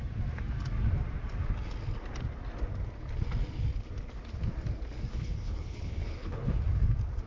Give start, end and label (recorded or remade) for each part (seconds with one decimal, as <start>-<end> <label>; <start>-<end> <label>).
0.0-5.1 recorded; 5.1-6.6 remade; 6.6-7.3 recorded